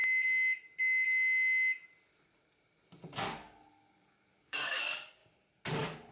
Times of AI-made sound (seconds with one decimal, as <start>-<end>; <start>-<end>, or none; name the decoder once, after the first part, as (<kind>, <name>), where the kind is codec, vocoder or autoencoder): 3.7-5.2 (codec, DAC)